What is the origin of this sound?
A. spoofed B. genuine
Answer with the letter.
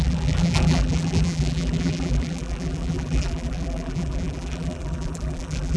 A